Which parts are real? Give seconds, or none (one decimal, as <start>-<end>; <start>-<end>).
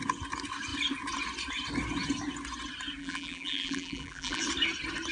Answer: 0.0-3.0; 4.4-5.1